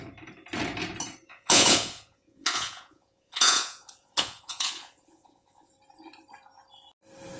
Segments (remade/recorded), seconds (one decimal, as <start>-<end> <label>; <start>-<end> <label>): 0.0-1.3 recorded; 1.3-5.7 remade; 5.7-7.4 recorded